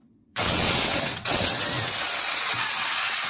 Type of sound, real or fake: fake